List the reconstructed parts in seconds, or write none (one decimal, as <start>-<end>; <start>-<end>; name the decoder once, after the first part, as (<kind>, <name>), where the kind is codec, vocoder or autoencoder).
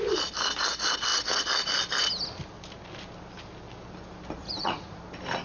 4.4-5.0 (vocoder, Vocos)